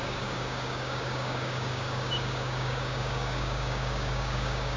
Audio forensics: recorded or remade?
remade